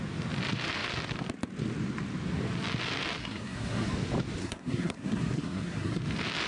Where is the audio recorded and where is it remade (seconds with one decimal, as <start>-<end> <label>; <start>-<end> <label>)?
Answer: 0.0-3.2 recorded; 3.2-3.9 remade; 3.9-4.4 recorded; 4.4-6.0 remade; 6.0-6.5 recorded